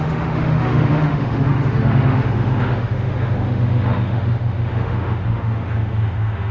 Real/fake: fake